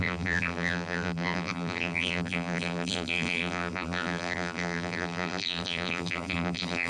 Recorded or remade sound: remade